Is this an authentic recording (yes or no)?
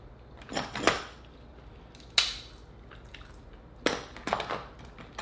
yes